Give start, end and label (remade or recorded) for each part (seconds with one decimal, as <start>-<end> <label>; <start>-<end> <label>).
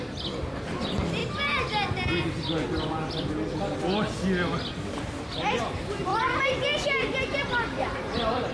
0.0-1.2 remade; 1.2-5.6 recorded; 5.6-6.1 remade; 6.1-7.5 recorded; 7.5-8.5 remade